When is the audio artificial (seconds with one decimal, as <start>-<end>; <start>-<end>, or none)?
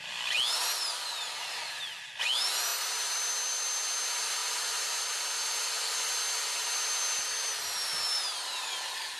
none